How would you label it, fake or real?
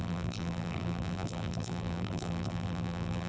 fake